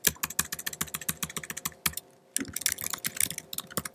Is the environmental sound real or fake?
real